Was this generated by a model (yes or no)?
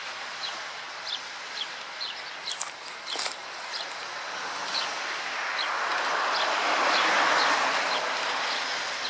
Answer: no